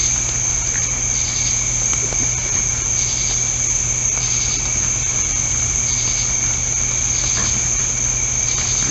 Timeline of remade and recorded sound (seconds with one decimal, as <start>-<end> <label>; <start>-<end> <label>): 0.0-8.9 recorded